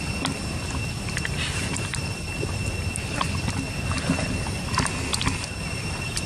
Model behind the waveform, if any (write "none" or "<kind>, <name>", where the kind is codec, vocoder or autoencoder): none